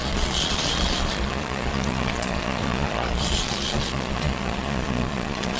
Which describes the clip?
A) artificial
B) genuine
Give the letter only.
A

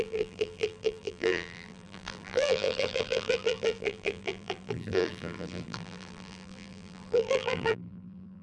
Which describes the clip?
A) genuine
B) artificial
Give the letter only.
B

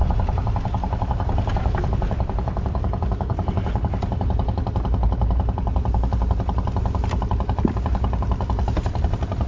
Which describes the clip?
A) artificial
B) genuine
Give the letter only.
B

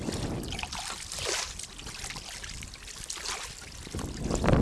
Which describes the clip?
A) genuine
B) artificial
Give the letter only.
A